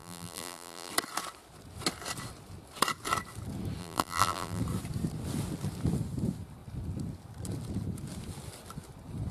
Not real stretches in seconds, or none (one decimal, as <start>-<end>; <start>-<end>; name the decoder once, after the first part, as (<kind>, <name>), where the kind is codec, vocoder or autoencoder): 0.0-0.9 (vocoder, BigVGAN v2); 3.8-4.6